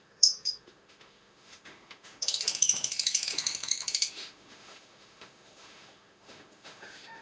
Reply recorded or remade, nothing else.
remade